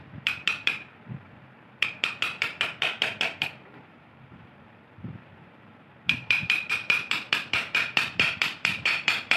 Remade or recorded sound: remade